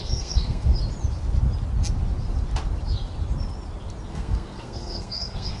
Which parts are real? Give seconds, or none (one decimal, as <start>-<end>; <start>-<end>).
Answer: 0.7-4.1